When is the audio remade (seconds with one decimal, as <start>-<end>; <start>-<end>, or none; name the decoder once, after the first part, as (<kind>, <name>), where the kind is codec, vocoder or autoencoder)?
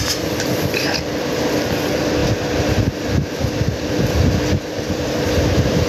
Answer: none